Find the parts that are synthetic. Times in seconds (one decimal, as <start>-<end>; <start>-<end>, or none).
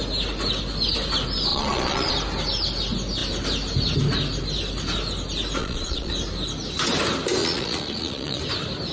1.5-2.1; 5.6-6.1; 7.4-8.4